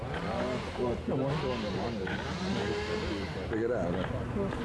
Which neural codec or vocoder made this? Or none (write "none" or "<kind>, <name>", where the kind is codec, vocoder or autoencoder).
none